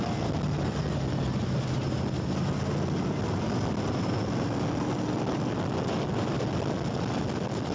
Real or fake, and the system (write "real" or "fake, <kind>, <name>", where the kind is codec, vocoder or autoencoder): real